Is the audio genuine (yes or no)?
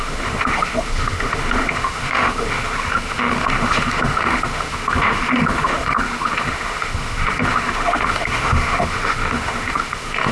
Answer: no